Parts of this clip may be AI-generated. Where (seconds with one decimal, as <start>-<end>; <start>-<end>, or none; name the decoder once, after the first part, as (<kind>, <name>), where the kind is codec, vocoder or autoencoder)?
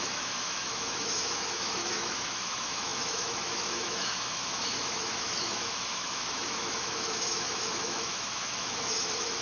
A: 0.0-9.4 (autoencoder, DAC-VAE)